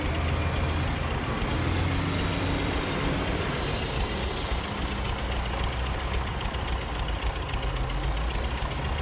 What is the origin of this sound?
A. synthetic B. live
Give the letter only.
B